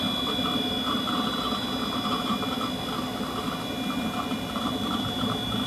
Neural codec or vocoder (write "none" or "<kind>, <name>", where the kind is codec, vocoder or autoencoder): none